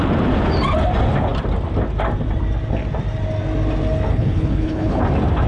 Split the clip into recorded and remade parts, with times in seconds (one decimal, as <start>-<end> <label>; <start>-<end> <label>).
0.0-4.1 recorded; 4.1-5.0 remade; 5.0-5.5 recorded